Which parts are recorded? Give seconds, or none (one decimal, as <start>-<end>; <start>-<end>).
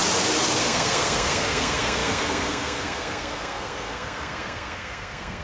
0.0-0.6